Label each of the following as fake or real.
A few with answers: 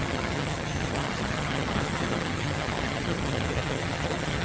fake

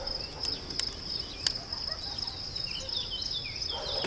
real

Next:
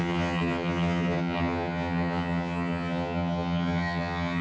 fake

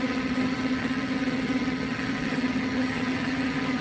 fake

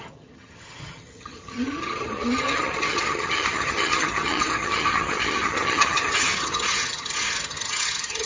fake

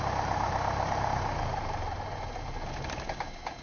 real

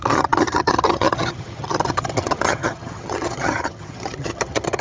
fake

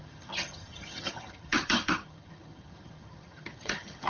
fake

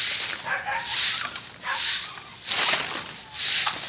real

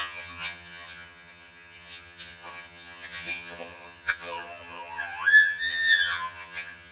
fake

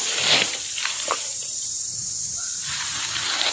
real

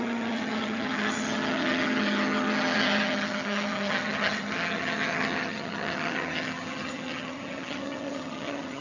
fake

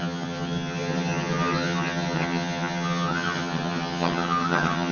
fake